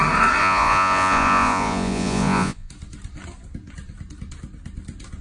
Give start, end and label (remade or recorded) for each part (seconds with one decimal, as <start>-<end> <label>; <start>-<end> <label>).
0.0-0.4 recorded; 0.4-2.7 remade; 2.7-5.2 recorded